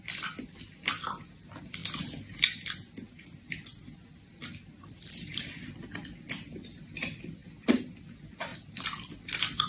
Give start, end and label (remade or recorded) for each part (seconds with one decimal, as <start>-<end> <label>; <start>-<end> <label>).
0.0-1.8 remade; 1.8-4.8 recorded; 4.8-7.4 remade; 7.4-8.0 recorded; 8.0-9.7 remade